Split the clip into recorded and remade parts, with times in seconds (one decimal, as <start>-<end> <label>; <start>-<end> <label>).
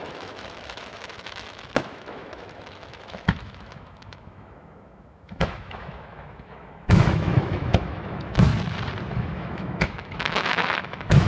0.0-8.5 remade; 8.5-9.1 recorded; 9.1-11.3 remade